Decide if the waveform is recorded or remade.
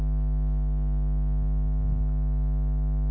remade